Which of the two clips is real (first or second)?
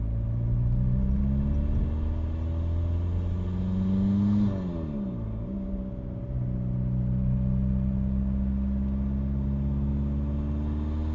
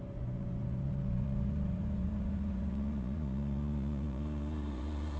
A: first